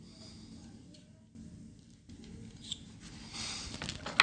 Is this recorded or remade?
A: recorded